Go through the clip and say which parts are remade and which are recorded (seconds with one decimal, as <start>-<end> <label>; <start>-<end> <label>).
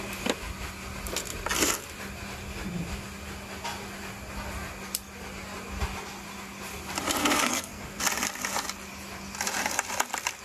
0.0-7.2 recorded; 7.2-8.0 remade; 8.0-10.4 recorded